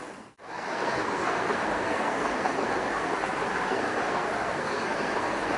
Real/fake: fake